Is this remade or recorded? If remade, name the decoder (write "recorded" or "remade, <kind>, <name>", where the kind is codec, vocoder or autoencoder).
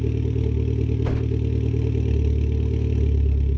recorded